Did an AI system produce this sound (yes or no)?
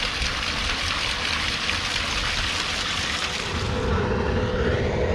no